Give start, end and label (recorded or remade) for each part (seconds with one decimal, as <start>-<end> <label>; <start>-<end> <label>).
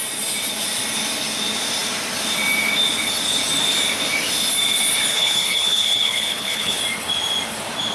0.0-5.1 recorded; 5.1-6.8 remade; 6.8-7.9 recorded